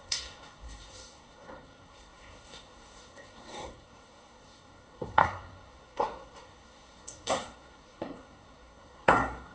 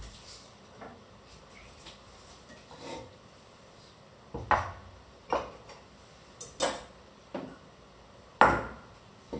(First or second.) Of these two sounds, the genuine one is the second